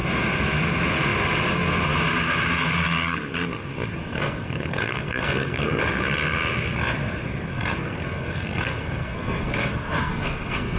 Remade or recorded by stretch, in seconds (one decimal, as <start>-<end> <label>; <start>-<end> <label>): 0.0-4.1 recorded; 4.1-5.8 remade; 5.8-7.5 recorded; 7.5-10.8 remade